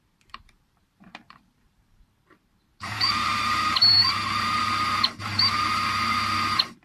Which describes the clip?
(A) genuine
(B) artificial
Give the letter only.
B